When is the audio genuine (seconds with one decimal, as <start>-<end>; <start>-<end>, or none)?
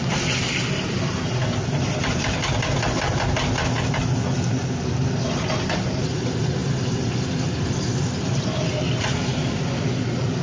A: 0.0-10.4